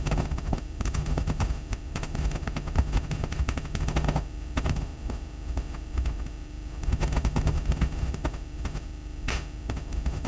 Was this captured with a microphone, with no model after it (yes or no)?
no